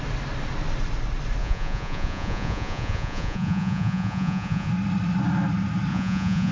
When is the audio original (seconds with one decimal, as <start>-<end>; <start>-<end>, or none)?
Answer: 0.0-1.4; 4.7-5.9